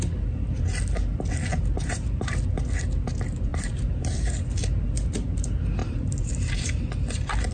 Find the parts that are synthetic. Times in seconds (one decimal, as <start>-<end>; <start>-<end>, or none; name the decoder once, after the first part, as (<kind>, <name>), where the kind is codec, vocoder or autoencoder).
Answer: 1.5-2.4 (vocoder, BigVGAN v2); 3.5-4.4; 5.8-6.8